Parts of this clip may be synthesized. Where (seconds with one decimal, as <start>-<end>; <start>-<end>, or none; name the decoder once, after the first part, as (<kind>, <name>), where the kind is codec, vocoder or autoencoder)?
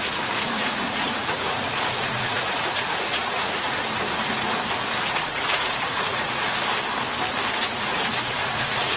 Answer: 0.0-4.5 (vocoder, Vocos); 5.1-6.4; 7.5-9.0